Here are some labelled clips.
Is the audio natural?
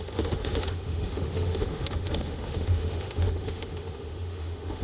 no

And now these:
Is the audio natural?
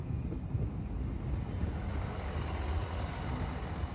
yes